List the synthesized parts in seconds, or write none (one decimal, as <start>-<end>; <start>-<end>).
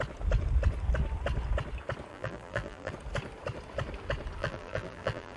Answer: 2.1-2.9; 4.4-5.4